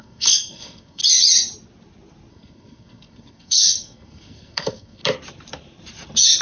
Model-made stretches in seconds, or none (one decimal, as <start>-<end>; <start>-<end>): 0.0-1.0; 2.3-5.0